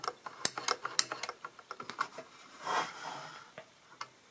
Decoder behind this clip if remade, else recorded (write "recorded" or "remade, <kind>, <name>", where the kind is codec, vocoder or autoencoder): recorded